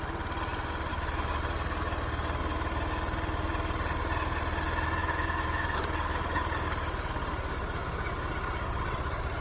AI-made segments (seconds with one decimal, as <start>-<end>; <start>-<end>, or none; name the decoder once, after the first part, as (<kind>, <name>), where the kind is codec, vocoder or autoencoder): 0.9-1.4 (autoencoder, DAC-VAE); 5.0-5.8